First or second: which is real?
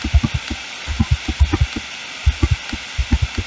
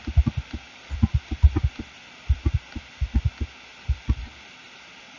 second